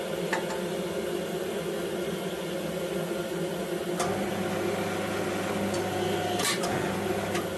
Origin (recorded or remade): recorded